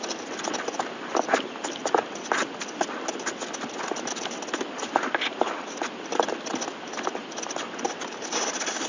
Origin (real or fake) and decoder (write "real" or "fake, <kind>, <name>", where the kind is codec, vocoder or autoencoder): real